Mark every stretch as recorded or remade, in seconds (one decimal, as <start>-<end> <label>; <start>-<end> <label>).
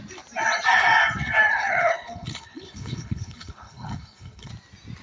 0.0-1.5 recorded; 1.5-4.5 remade; 4.5-5.0 recorded